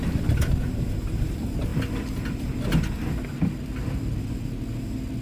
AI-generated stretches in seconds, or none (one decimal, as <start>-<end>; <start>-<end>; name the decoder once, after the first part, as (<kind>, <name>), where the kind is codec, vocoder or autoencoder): none